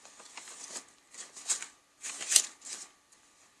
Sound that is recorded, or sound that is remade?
recorded